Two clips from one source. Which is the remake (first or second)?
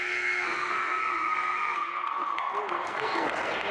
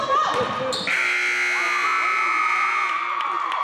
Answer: first